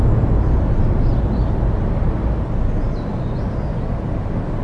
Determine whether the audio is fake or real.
real